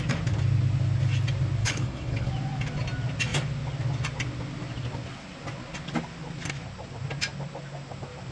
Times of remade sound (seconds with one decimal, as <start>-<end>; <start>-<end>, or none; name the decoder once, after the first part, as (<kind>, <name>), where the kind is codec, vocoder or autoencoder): 1.6-2.3 (codec, HILCodec)